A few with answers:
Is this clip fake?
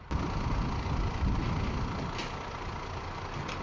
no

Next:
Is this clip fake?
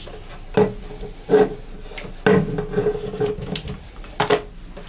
no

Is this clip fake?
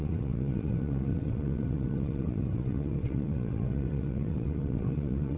yes